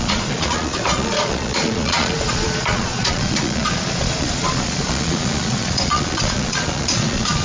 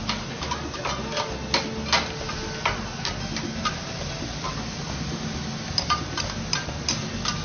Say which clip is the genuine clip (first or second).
second